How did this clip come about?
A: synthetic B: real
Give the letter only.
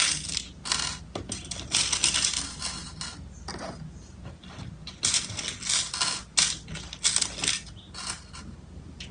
B